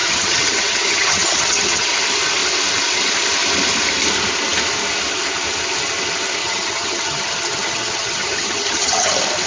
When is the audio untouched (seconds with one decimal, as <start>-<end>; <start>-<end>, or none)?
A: 1.9-6.4; 9.1-9.5

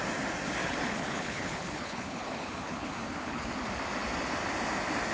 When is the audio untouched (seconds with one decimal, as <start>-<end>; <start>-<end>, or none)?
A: 0.0-0.6; 3.5-5.1

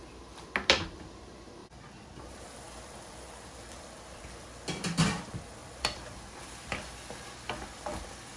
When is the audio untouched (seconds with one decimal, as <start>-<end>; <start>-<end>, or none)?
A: 0.0-1.6; 4.2-5.6; 6.9-8.4

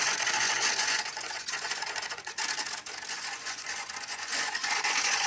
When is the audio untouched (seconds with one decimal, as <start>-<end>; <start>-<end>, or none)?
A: 2.4-3.1

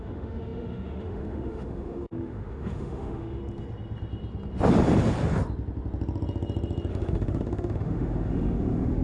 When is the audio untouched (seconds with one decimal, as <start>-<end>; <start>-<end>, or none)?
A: 3.4-6.9

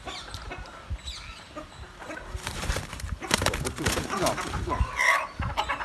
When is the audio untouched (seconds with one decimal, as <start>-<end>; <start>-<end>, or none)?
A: 0.0-1.3; 4.8-5.8

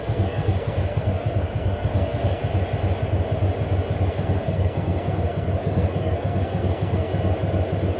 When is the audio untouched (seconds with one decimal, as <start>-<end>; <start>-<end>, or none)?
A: 2.4-4.1; 7.1-8.0